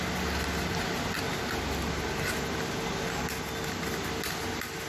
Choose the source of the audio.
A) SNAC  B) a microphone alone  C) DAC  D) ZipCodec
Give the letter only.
B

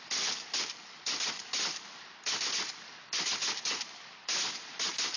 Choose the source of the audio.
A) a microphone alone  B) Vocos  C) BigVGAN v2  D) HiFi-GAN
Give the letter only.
A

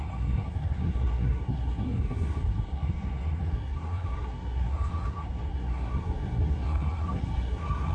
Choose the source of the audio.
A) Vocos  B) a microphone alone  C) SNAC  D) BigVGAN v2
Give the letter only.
C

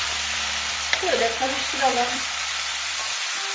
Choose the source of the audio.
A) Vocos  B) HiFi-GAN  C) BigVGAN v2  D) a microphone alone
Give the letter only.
C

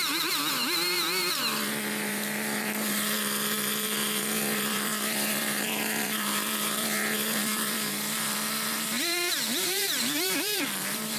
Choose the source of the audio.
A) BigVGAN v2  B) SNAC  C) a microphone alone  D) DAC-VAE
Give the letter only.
A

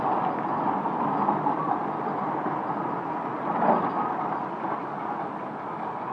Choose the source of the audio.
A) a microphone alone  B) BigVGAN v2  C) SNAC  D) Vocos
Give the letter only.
A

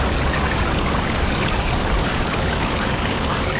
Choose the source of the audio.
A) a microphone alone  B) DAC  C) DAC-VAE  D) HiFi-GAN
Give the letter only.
B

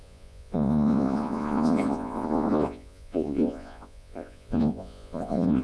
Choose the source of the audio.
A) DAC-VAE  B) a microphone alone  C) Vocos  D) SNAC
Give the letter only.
C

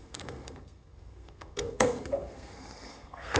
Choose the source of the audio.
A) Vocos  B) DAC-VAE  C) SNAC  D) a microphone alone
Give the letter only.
C